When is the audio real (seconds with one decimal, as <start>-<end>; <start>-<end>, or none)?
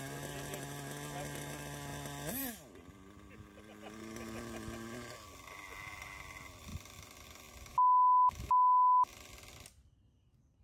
0.0-7.7; 8.5-10.6